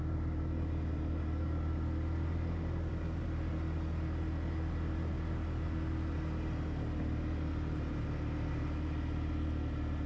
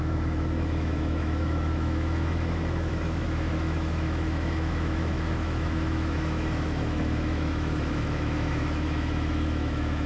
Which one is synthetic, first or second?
second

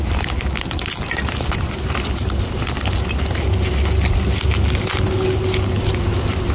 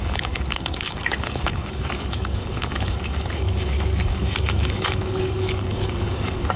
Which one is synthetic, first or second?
second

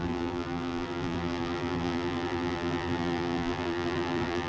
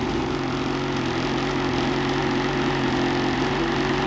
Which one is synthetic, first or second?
first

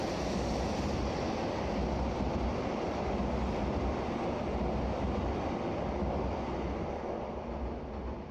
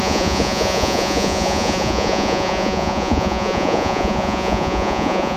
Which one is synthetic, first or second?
second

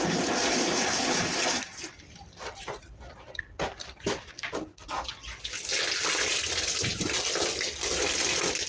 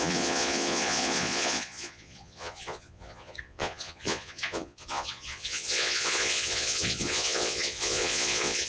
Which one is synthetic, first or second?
second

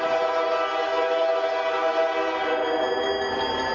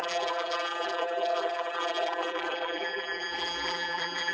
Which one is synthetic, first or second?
second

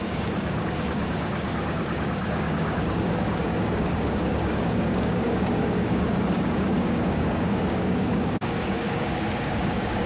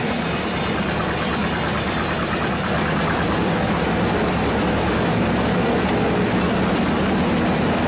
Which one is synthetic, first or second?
first